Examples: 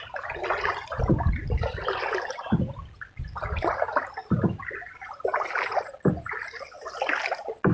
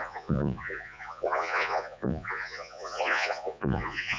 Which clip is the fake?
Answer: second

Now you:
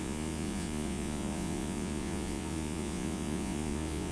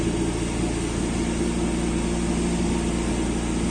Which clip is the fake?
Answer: first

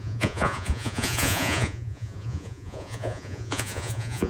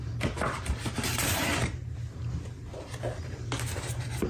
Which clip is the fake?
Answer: first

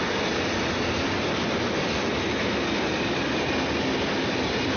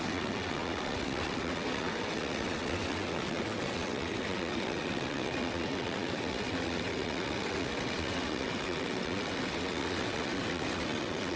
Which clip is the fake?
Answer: second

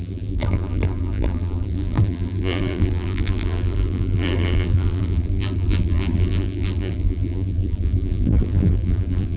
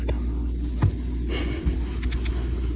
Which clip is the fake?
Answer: first